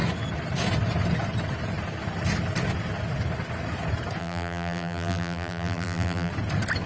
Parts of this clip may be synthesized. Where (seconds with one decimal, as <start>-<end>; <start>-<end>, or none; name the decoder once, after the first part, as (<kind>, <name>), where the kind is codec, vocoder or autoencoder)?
4.2-6.3 (vocoder, BigVGAN v2)